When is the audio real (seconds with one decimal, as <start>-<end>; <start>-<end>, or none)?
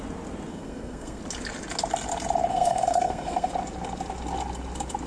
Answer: 0.0-0.5; 1.2-2.5; 3.5-5.1